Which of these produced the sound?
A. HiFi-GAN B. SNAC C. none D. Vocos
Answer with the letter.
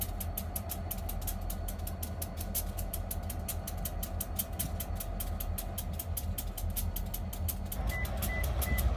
C